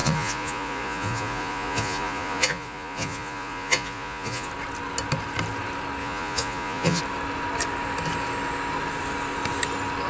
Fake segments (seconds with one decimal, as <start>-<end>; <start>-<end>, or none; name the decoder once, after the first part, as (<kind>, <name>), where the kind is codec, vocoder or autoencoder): 0.0-4.5 (vocoder, Vocos); 6.0-7.0